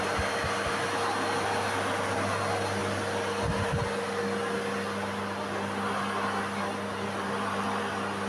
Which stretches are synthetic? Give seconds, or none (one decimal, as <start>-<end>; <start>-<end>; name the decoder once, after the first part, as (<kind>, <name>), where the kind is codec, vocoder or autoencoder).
2.8-7.8 (vocoder, BigVGAN v2)